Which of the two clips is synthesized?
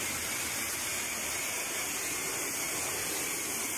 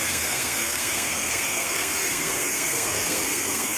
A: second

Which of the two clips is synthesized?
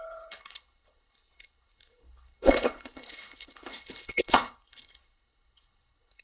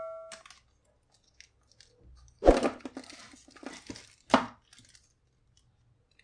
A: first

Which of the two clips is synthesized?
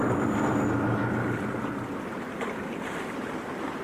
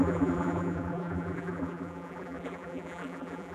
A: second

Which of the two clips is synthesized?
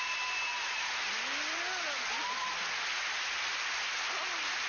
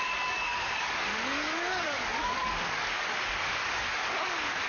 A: second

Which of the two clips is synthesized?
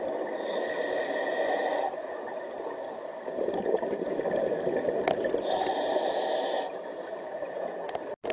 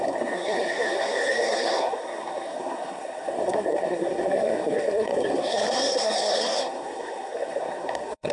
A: second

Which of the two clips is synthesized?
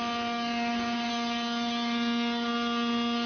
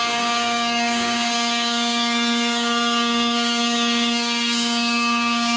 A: second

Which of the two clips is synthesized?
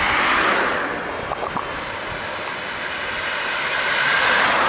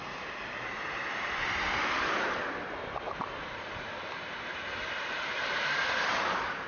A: second